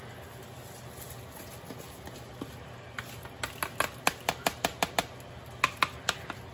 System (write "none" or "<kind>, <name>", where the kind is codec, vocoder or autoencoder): none